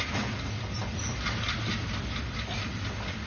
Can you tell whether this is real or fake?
real